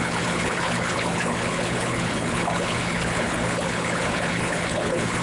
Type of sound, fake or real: fake